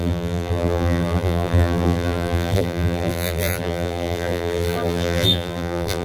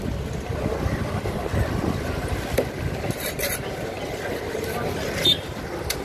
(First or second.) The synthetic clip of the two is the first